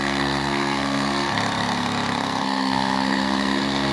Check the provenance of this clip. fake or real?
fake